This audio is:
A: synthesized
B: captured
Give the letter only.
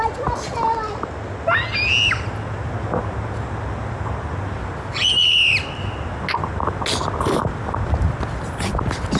B